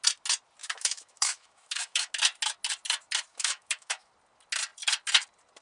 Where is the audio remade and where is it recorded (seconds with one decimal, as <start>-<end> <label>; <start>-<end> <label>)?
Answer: 0.0-0.6 recorded; 0.6-2.1 remade; 2.1-3.3 recorded; 3.3-4.1 remade; 4.1-5.6 recorded